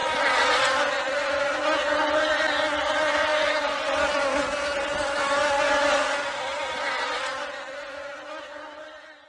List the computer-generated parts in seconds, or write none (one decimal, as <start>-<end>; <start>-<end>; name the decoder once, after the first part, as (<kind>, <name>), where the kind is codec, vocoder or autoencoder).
none